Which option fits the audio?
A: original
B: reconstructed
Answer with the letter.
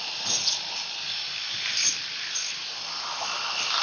A